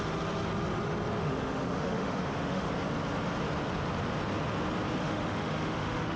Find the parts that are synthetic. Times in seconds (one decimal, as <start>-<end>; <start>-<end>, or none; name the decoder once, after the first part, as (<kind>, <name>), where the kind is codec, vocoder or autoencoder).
1.2-2.7 (autoencoder, DAC-VAE); 5.0-6.2